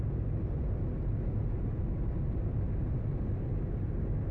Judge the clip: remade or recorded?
recorded